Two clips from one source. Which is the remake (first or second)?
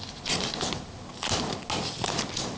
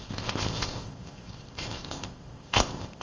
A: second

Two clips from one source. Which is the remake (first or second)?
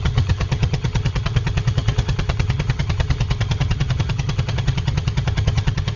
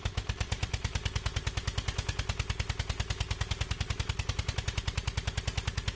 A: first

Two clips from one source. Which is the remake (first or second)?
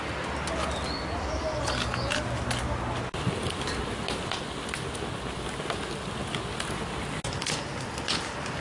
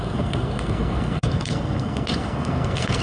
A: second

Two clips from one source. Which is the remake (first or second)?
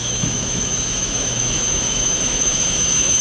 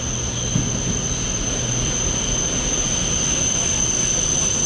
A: first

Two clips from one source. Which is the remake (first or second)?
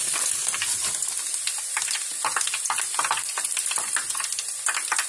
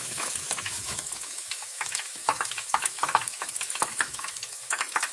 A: second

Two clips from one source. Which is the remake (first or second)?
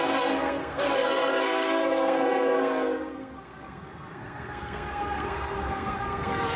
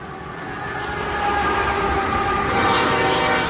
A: first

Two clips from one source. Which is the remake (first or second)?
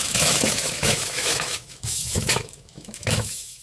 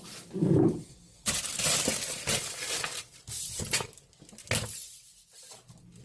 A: first